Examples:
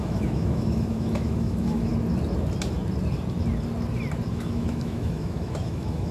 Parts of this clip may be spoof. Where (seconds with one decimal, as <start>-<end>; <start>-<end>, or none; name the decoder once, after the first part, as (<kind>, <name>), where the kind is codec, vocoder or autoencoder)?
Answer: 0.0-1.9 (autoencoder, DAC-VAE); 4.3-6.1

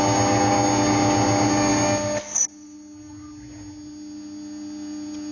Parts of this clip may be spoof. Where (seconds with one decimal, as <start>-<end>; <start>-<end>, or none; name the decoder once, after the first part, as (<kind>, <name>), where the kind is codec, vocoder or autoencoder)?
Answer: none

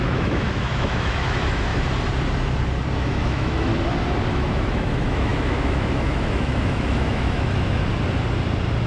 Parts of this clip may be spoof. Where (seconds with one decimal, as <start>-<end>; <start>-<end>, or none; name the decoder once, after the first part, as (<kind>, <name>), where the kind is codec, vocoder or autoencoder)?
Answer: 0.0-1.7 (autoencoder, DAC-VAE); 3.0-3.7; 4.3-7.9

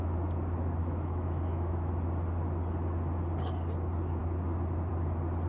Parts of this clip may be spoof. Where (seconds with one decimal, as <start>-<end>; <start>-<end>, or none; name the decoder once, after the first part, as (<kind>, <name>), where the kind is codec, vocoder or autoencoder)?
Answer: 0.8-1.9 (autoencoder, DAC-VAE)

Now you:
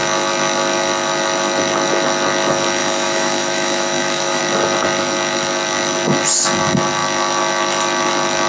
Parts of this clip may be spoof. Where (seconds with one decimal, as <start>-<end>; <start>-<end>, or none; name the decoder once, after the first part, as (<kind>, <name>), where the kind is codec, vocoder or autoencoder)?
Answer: 2.8-4.4 (autoencoder, DAC-VAE)

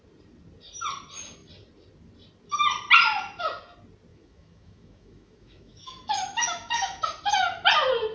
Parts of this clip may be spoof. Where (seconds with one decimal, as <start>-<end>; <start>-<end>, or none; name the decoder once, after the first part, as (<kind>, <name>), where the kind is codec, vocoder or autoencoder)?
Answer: 4.1-7.0 (autoencoder, DAC-VAE)

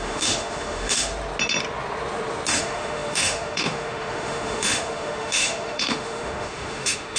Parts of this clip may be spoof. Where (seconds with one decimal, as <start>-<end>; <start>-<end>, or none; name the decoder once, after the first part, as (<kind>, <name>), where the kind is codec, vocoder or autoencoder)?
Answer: 0.0-1.1 (autoencoder, DAC-VAE); 2.6-7.2